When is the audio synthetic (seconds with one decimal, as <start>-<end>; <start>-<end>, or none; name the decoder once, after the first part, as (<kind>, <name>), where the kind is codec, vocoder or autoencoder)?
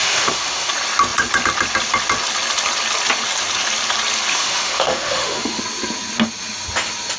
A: 0.0-0.7 (autoencoder, DAC-VAE); 4.3-5.6